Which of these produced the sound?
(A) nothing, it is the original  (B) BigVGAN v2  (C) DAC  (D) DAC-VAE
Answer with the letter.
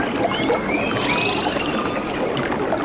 A